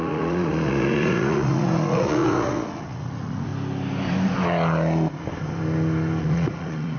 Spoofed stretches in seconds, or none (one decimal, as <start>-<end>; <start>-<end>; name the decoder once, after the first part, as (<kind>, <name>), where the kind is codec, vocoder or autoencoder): 0.0-3.5 (vocoder, Vocos); 6.2-7.0